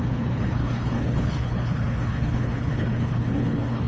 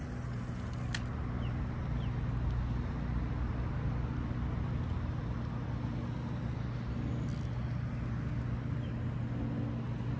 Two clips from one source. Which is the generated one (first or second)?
first